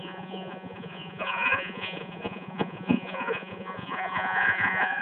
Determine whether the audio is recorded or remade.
remade